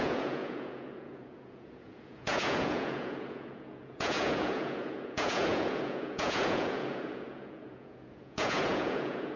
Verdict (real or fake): fake